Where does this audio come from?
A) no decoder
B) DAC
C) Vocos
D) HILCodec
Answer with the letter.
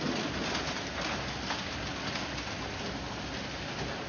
A